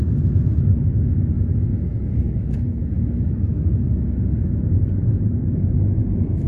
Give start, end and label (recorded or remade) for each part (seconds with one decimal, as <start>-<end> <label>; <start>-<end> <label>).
0.0-6.5 remade